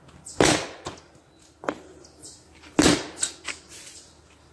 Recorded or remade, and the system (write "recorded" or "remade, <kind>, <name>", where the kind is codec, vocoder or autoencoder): recorded